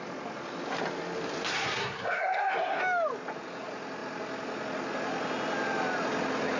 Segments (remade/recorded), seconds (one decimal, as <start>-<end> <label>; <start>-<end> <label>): 0.0-1.5 recorded; 1.5-2.8 remade; 2.8-6.6 recorded